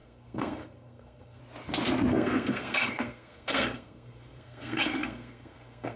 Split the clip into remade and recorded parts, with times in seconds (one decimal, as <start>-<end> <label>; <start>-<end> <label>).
0.0-1.4 remade; 1.4-2.1 recorded; 2.1-6.0 remade